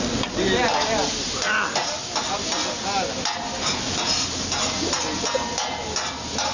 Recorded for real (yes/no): yes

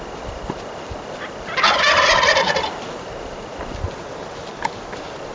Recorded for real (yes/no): yes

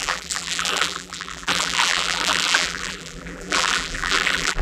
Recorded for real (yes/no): no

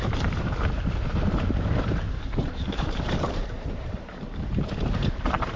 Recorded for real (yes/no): no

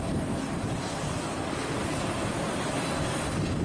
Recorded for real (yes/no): yes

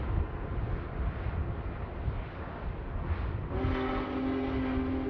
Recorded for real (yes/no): yes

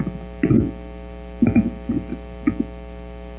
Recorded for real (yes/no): yes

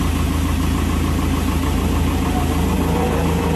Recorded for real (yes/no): yes